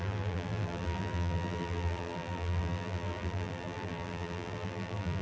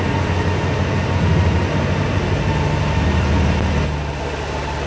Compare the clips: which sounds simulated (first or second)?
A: first